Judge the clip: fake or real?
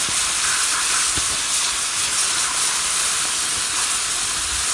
real